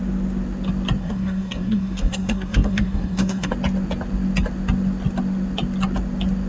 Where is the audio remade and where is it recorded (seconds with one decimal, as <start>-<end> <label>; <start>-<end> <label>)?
0.0-1.0 recorded; 1.0-3.5 remade; 3.5-6.5 recorded